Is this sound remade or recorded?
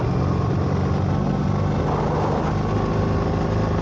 recorded